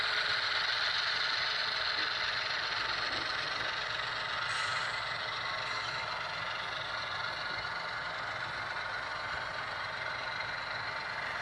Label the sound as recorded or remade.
recorded